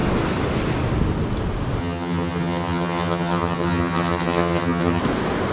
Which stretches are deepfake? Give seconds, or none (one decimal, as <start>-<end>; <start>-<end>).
1.8-5.0